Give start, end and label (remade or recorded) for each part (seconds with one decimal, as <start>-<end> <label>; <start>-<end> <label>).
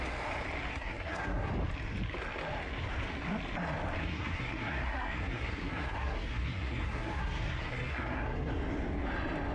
0.0-0.7 recorded; 0.7-1.5 remade; 1.5-4.0 recorded; 4.0-8.5 remade; 8.5-9.5 recorded